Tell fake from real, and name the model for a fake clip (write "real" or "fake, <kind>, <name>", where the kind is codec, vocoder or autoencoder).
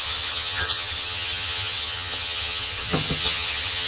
fake, vocoder, HiFi-GAN